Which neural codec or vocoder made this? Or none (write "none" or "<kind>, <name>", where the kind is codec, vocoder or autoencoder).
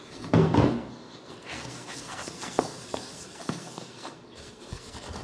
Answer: codec, SNAC